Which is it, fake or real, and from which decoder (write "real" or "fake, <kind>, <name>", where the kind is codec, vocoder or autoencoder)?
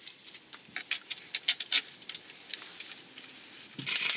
real